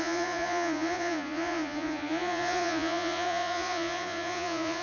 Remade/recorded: remade